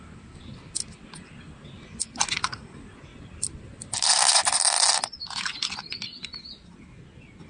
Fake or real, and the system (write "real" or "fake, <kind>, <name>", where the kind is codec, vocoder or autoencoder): real